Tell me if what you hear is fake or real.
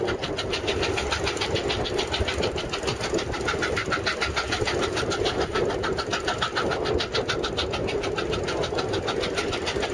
real